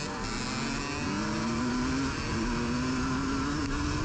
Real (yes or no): yes